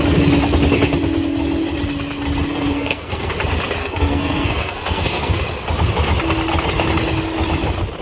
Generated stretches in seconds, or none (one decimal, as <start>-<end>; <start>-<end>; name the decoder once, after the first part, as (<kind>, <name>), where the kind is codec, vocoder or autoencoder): 2.5-3.3 (codec, SNAC); 3.8-5.4